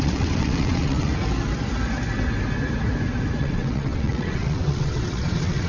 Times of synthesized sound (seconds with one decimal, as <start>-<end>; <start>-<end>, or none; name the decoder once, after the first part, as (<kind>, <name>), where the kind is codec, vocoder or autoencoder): 0.0-1.1 (vocoder, WaveNeXt); 3.4-5.7